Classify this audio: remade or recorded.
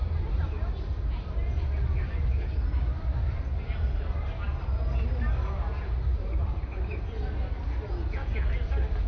recorded